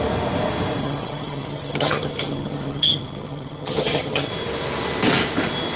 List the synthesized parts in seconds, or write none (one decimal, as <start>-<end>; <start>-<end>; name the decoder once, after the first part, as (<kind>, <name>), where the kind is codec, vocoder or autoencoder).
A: 0.8-4.3 (vocoder, HiFi-GAN)